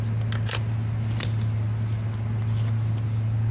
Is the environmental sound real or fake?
real